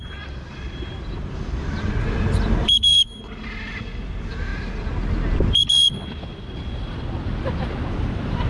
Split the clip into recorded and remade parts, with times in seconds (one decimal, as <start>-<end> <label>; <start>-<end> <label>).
0.0-4.5 remade; 4.5-7.9 recorded; 7.9-8.5 remade